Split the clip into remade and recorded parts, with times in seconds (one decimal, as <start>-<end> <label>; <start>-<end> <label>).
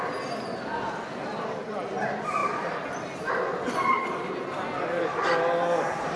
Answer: 0.0-2.4 recorded; 2.4-3.3 remade; 3.3-6.2 recorded